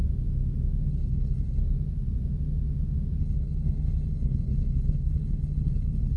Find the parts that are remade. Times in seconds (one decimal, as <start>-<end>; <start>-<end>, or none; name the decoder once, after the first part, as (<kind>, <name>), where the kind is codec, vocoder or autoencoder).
0.9-1.6 (codec, HILCodec); 3.2-6.2